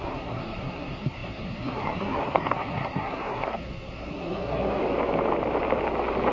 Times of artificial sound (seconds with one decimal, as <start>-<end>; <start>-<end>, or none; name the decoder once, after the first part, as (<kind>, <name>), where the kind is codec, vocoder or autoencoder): 0.0-4.8 (codec, SNAC)